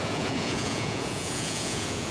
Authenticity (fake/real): fake